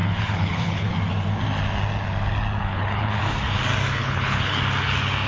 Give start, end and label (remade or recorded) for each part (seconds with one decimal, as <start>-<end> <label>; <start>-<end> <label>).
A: 0.0-0.9 remade; 0.9-2.6 recorded; 2.6-3.2 remade; 3.2-4.0 recorded; 4.0-4.6 remade; 4.6-5.3 recorded